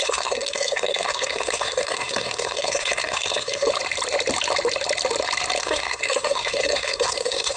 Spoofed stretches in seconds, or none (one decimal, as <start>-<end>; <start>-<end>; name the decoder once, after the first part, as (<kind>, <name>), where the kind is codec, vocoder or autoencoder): 0.0-3.7 (codec, SNAC); 5.6-7.6